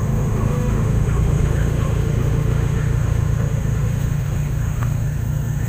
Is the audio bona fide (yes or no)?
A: no